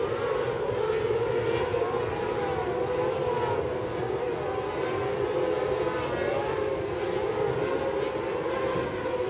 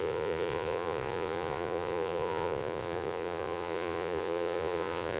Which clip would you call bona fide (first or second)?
first